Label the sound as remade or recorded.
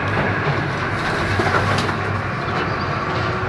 recorded